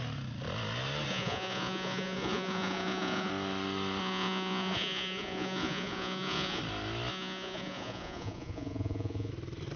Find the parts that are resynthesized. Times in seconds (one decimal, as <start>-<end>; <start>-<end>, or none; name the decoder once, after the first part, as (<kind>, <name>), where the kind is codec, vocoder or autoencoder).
1.1-3.3 (vocoder, Vocos); 4.0-6.6; 7.1-9.3